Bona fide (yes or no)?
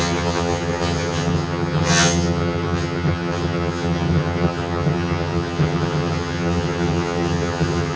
no